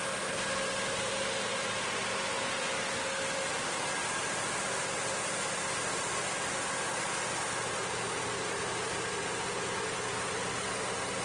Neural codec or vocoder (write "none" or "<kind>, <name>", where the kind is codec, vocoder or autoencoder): none